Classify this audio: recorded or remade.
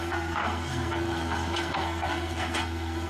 remade